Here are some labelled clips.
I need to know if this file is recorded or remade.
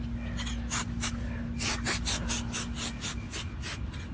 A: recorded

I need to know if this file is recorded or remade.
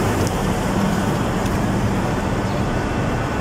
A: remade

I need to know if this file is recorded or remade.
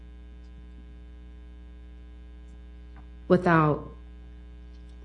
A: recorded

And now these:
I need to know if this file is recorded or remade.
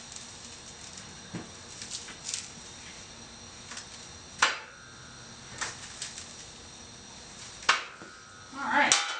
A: recorded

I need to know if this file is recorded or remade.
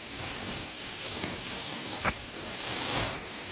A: remade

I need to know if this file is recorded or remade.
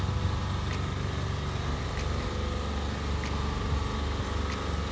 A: recorded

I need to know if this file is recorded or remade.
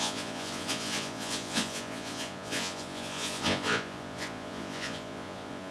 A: remade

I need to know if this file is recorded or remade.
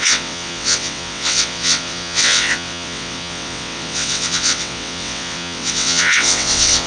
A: remade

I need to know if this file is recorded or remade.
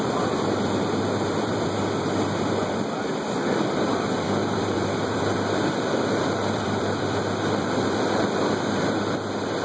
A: remade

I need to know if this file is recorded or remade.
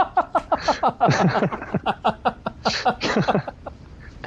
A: recorded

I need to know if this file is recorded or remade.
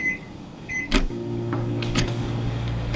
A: remade